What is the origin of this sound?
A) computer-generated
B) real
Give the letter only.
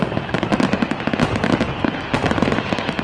B